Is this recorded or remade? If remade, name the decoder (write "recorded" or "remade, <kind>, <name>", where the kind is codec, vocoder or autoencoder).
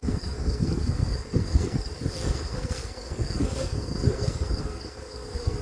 remade, codec, SNAC